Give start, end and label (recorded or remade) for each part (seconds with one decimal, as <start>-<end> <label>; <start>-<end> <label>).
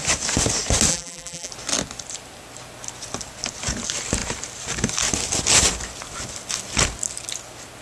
0.0-0.9 recorded; 0.9-1.5 remade; 1.5-7.8 recorded